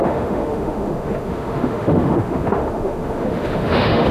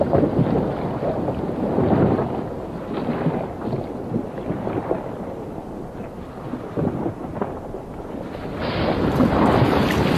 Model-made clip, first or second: first